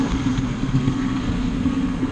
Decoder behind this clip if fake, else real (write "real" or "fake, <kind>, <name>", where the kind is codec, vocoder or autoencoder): fake, codec, SNAC